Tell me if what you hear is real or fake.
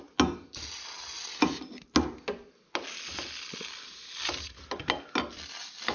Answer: real